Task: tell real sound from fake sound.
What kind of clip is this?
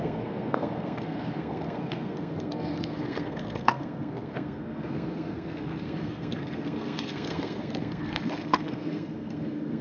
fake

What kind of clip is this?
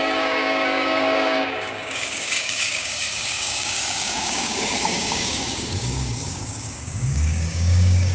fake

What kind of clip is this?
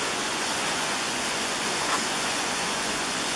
fake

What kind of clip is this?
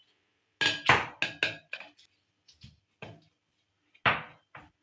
real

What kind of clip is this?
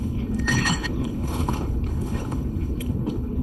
fake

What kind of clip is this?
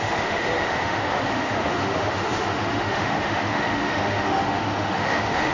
fake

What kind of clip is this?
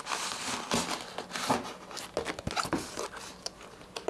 real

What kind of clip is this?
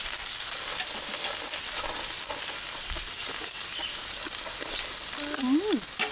real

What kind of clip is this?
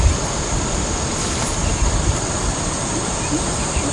real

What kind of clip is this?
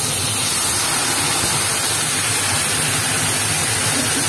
real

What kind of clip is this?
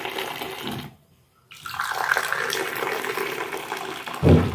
real